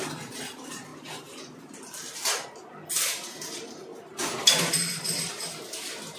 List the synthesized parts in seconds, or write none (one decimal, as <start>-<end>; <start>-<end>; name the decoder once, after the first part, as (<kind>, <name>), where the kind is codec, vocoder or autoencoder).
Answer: 0.0-0.9 (vocoder, BigVGAN v2); 2.9-3.9; 4.5-6.2